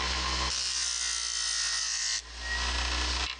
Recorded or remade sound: recorded